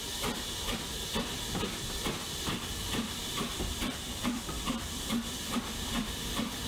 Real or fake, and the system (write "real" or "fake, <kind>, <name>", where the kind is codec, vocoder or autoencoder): fake, vocoder, BigVGAN v2